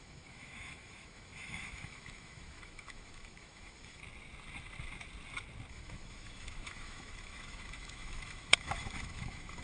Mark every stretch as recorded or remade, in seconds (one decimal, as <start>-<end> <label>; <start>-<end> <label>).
0.0-4.0 remade; 4.0-5.7 recorded; 5.7-9.6 remade